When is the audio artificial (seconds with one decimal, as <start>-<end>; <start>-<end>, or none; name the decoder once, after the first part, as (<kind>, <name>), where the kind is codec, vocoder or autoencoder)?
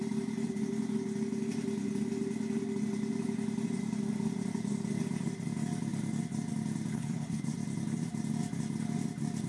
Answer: 6.9-7.4 (codec, HILCodec)